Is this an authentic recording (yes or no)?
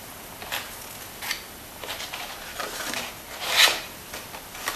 yes